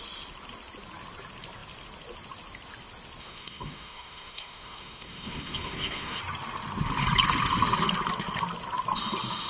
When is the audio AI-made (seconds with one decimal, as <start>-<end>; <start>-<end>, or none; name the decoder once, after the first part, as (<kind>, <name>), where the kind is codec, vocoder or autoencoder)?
3.2-6.2 (codec, SNAC)